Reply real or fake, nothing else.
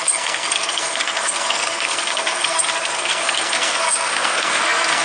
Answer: fake